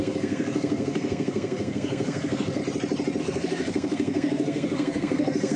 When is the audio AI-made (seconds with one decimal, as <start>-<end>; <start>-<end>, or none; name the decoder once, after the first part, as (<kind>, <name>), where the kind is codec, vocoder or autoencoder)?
0.0-2.6 (codec, SNAC); 3.2-5.6